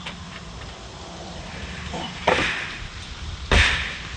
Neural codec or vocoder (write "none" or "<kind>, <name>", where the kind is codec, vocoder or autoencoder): vocoder, BigVGAN v2